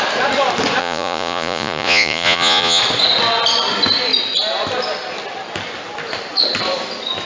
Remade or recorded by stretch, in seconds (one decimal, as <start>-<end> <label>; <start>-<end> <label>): 0.0-0.8 recorded; 0.8-2.8 remade; 2.8-7.2 recorded